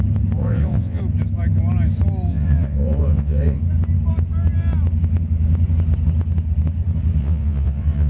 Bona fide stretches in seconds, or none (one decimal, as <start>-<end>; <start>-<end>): 0.0-0.4; 1.0-2.3; 3.6-7.2